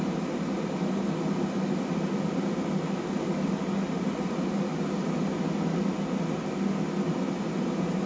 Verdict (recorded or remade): recorded